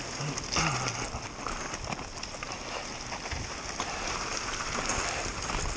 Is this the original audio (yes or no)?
yes